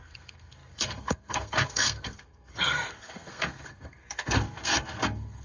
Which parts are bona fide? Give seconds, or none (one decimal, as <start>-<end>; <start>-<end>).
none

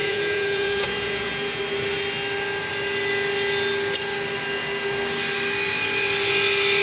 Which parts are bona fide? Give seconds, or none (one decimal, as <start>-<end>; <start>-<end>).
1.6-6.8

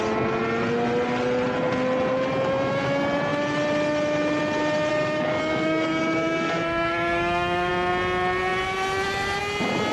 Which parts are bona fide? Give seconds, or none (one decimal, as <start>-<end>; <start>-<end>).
0.0-4.9; 7.7-9.9